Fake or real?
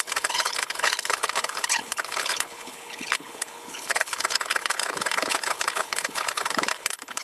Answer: fake